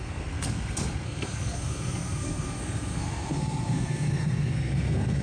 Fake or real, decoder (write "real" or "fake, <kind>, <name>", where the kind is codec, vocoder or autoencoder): fake, codec, SNAC